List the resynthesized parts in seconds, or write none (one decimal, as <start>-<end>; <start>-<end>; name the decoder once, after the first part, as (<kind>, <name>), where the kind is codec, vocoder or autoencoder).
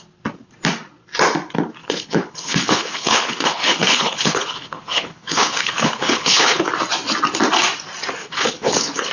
1.8-6.7 (codec, HILCodec); 8.2-9.1